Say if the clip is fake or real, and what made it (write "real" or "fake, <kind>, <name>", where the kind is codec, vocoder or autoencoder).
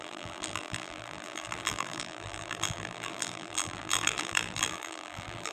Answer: fake, vocoder, BigVGAN v2